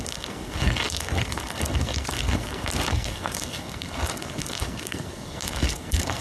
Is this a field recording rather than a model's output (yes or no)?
no